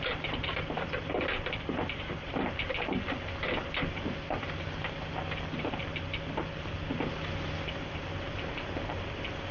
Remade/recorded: recorded